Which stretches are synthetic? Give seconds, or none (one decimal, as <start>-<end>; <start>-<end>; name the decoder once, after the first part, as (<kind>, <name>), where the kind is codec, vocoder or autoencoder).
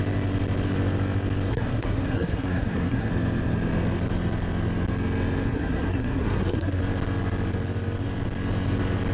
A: 1.5-3.1 (codec, SNAC); 5.5-6.8